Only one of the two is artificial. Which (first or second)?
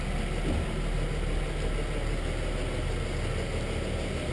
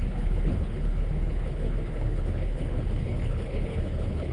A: second